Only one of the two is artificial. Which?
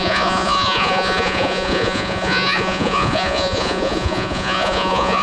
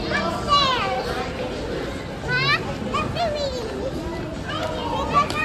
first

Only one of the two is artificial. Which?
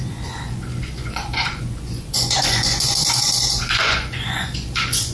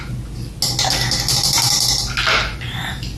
first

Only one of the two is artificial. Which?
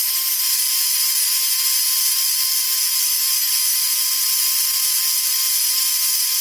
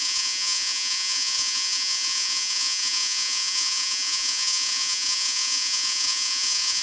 second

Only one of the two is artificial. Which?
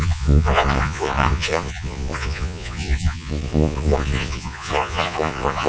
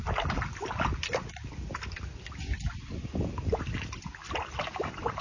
first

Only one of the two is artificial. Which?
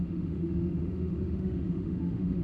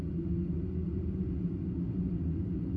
first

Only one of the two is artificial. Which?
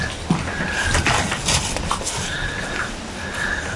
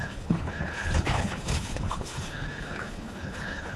second